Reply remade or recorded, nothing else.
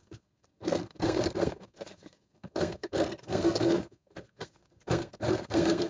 remade